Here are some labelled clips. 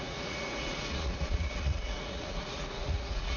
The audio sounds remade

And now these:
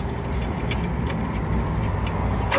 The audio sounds recorded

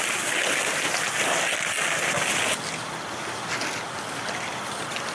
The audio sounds recorded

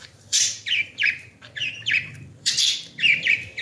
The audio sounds remade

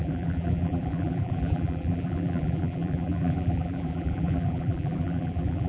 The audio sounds remade